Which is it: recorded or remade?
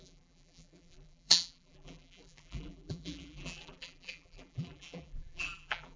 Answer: remade